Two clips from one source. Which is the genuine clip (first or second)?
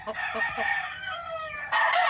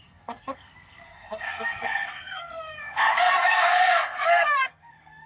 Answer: first